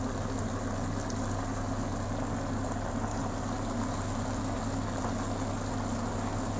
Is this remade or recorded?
recorded